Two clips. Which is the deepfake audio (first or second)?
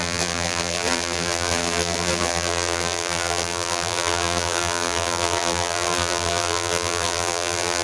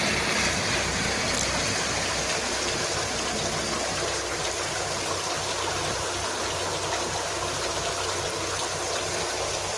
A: first